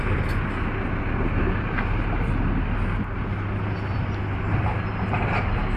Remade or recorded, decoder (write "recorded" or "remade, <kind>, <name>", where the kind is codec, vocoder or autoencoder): recorded